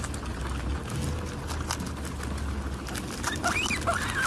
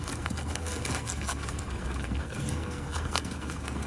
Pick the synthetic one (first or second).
second